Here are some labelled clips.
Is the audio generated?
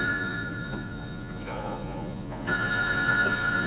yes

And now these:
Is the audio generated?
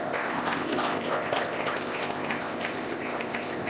yes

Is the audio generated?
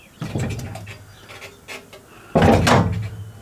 no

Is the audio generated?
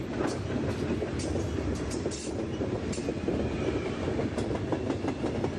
yes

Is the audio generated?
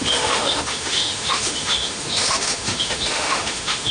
yes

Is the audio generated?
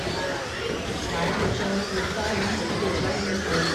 no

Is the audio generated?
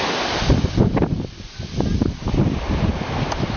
no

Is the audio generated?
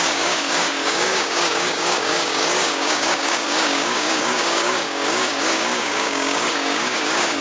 yes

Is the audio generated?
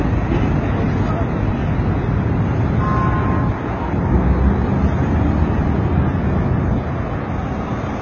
no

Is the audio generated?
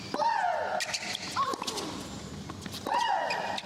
no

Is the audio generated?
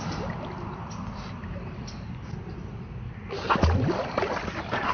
yes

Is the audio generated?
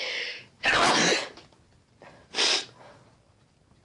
no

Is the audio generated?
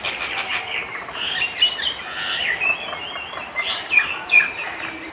no